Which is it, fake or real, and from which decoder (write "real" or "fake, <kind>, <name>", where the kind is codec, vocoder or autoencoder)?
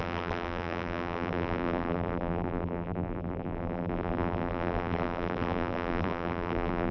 fake, vocoder, BigVGAN v2